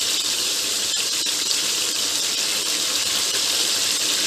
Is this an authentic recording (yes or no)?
no